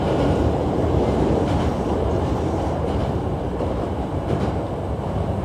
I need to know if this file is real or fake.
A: fake